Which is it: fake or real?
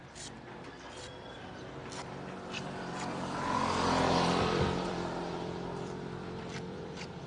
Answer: fake